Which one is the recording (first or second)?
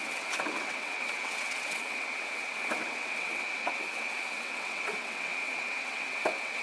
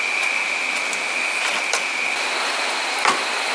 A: second